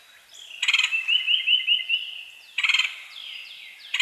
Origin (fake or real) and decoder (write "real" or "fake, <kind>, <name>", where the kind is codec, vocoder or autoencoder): real